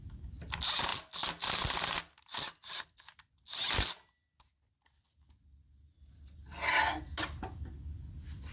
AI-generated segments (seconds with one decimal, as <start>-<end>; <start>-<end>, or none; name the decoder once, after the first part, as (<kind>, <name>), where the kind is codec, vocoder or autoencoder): none